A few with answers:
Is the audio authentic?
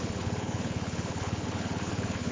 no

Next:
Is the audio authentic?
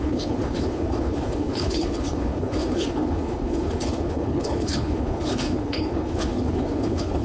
no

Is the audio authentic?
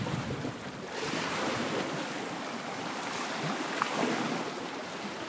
yes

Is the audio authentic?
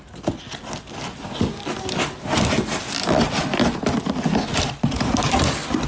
yes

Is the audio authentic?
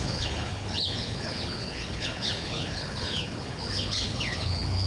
no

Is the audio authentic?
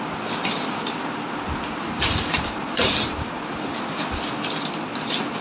yes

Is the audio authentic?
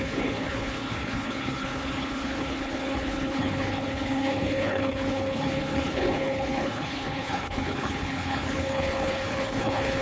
no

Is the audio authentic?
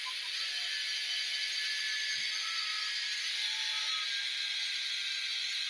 yes